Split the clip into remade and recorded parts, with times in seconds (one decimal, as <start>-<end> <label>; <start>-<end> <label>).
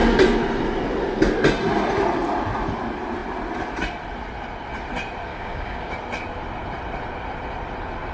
0.0-5.3 recorded; 5.3-5.9 remade; 5.9-8.1 recorded